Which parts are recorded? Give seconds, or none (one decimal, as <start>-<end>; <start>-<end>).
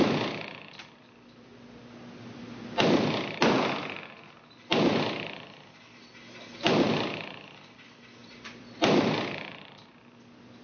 0.0-8.2; 9.9-10.6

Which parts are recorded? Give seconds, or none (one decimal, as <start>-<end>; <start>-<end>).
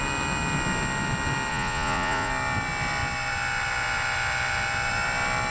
0.0-1.5; 2.3-5.5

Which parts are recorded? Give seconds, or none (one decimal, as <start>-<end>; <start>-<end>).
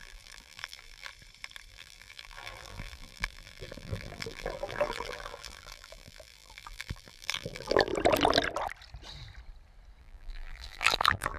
1.1-1.7; 7.9-10.0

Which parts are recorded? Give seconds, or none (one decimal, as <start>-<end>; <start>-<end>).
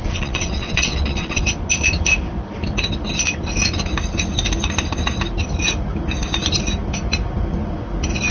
1.4-8.3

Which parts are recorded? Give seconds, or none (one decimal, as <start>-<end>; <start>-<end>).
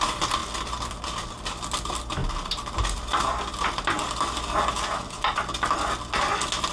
0.4-0.9; 2.2-6.2